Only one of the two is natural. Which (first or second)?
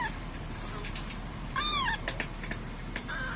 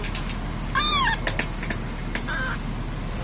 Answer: second